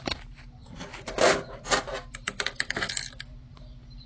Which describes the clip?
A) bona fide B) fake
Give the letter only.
B